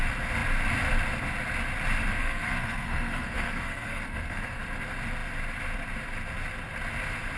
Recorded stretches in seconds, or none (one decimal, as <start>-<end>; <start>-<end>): 0.0-2.1; 4.6-7.4